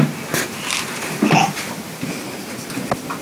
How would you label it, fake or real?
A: real